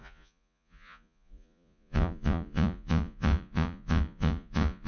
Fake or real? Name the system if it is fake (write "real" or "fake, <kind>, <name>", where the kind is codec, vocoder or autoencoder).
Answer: fake, vocoder, Vocos